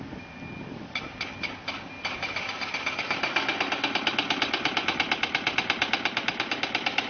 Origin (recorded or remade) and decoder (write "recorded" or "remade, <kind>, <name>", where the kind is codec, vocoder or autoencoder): recorded